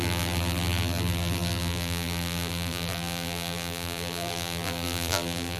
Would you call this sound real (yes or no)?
no